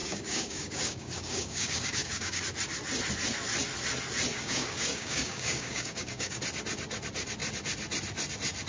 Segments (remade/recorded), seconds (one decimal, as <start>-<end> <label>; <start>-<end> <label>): 0.0-2.4 remade; 2.4-4.3 recorded; 4.3-6.4 remade; 6.4-8.7 recorded